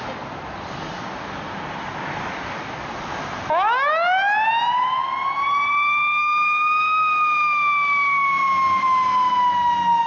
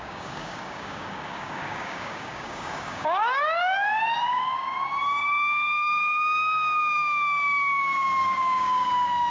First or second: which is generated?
second